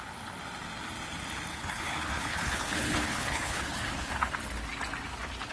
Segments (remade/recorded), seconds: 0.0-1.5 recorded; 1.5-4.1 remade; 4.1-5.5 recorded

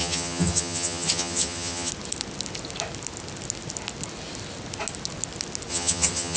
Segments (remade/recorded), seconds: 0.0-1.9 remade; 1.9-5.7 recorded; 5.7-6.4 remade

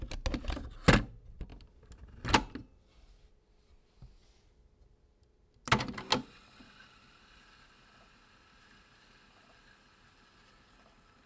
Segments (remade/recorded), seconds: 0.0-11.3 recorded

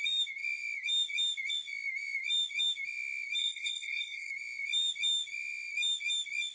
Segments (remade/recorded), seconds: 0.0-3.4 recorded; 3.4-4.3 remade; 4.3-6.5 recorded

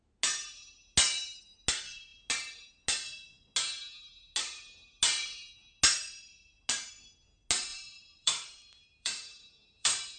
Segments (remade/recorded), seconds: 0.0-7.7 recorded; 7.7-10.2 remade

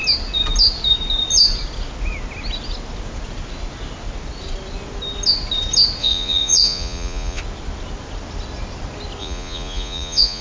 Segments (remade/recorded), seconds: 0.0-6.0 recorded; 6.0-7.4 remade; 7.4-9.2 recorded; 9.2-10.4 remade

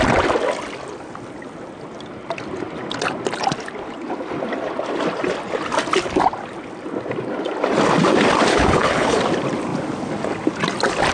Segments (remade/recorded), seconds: 0.0-8.5 recorded; 8.5-9.2 remade; 9.2-11.1 recorded